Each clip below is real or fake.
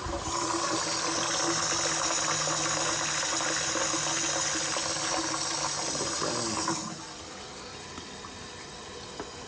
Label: real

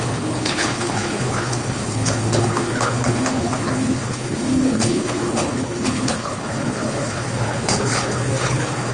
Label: fake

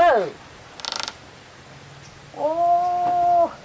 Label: real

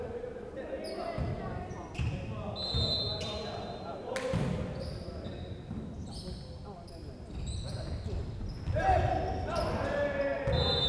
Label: real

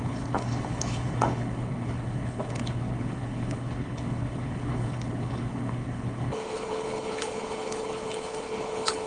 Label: fake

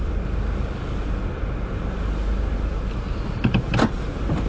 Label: real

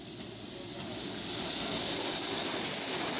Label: real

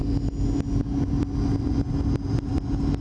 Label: real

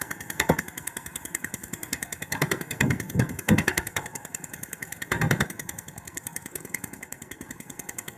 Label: fake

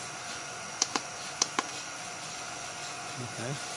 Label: fake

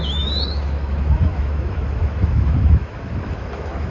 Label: fake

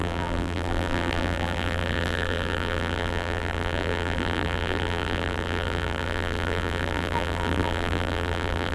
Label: fake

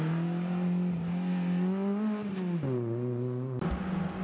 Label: real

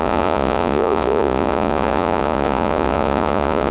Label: fake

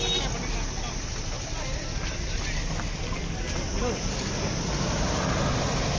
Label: real